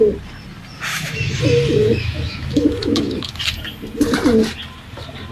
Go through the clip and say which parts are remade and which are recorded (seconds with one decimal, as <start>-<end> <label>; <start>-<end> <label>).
0.0-0.9 recorded; 0.9-1.4 remade; 1.4-1.8 recorded; 1.8-3.4 remade; 3.4-5.3 recorded